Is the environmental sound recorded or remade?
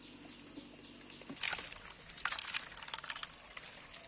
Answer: recorded